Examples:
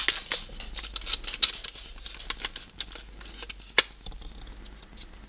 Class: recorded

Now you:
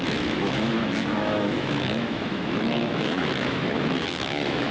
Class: remade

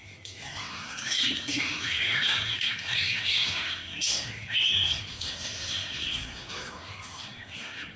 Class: remade